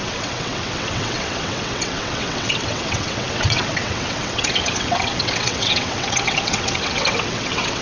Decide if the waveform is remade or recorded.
remade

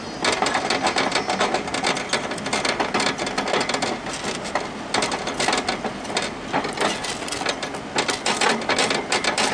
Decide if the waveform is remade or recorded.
recorded